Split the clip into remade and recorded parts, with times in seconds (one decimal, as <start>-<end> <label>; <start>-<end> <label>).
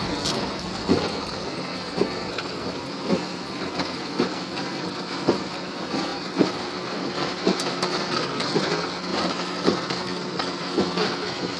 0.0-11.6 remade